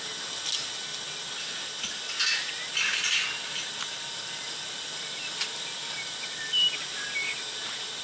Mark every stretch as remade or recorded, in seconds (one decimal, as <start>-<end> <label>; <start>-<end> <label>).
0.0-8.0 recorded